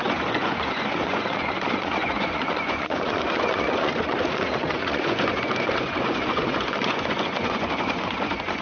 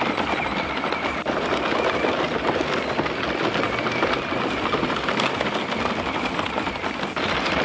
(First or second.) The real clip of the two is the second